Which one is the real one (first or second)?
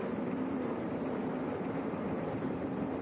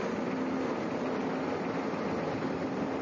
second